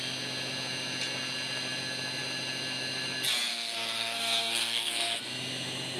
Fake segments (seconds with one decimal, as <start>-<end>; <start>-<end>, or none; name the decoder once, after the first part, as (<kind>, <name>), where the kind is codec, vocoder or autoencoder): 3.5-5.2 (codec, SNAC)